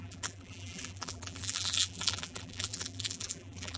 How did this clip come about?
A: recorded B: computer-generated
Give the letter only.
B